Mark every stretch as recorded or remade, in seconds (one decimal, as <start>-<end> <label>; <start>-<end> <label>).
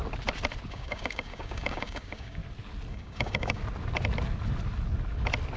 0.0-0.7 recorded; 0.7-2.4 remade; 2.4-2.9 recorded; 2.9-3.6 remade; 3.6-5.6 recorded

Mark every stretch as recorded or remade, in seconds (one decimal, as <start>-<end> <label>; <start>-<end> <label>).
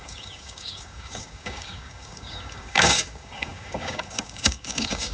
0.0-5.1 remade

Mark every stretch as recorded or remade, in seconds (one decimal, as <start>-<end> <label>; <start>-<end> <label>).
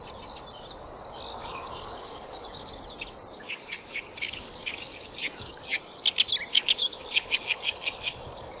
0.0-1.3 recorded; 1.3-2.7 remade; 2.7-3.3 recorded; 3.3-5.8 remade; 5.8-6.5 recorded; 6.5-8.6 remade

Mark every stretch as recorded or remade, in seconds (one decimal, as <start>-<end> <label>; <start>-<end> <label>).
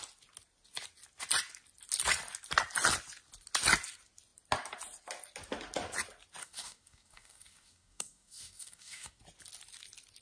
0.0-6.4 recorded; 6.4-9.2 remade; 9.2-10.2 recorded